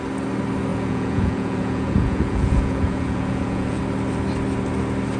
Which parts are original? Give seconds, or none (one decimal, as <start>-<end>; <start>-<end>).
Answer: 0.0-0.7; 3.8-5.2